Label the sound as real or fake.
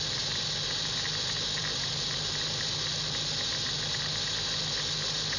real